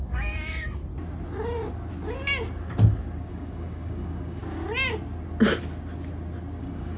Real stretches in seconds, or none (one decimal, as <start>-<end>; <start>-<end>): 0.8-3.3; 4.4-6.6